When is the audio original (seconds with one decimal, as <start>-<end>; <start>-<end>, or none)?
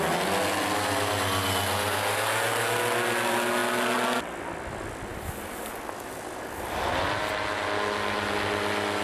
0.0-9.0